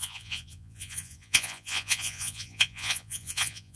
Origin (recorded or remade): remade